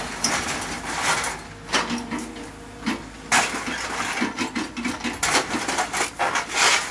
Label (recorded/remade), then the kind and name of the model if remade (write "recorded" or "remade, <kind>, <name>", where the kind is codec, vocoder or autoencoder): recorded